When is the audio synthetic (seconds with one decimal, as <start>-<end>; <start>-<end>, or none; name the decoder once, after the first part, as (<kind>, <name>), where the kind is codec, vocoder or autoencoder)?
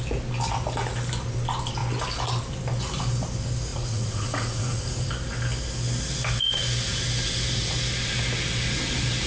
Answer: 3.7-5.1 (vocoder, Vocos)